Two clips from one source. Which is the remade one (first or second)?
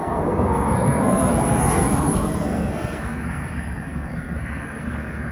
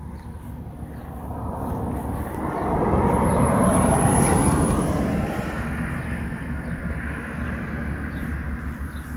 first